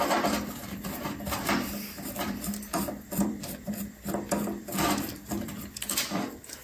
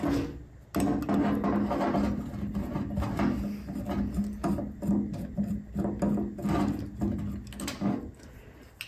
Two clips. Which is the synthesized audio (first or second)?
first